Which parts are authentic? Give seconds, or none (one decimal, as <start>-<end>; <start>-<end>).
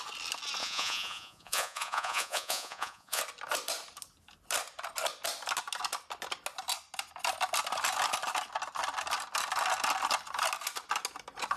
0.0-0.6; 3.2-11.6